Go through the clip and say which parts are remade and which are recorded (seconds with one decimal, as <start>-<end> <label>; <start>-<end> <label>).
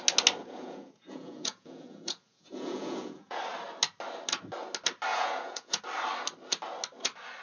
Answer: 0.0-0.4 recorded; 0.4-3.4 remade; 3.4-5.1 recorded; 5.1-5.8 remade; 5.8-7.4 recorded